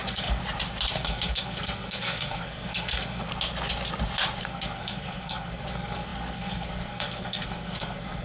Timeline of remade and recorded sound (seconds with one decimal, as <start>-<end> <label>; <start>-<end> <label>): 0.0-0.4 remade; 0.4-0.9 recorded; 0.9-3.3 remade; 3.3-4.4 recorded; 4.4-8.2 remade